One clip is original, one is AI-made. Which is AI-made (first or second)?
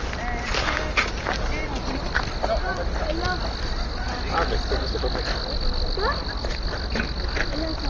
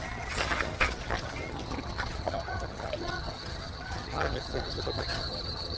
second